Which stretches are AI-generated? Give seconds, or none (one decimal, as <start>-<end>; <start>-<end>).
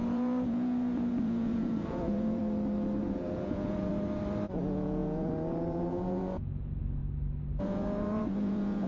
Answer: 0.0-2.4; 3.0-3.9; 4.6-7.0; 7.6-8.9